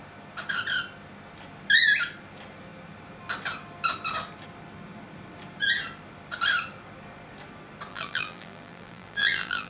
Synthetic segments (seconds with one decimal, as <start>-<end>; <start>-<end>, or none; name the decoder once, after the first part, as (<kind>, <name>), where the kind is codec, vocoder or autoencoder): 7.9-9.7 (vocoder, BigVGAN v2)